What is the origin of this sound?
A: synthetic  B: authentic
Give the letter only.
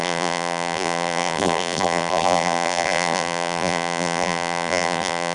A